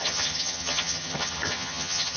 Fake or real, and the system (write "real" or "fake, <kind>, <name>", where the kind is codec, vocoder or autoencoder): fake, vocoder, HiFi-GAN